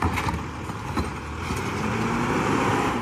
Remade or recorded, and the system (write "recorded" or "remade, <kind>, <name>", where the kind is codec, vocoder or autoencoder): recorded